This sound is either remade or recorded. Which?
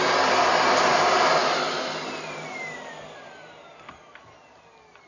recorded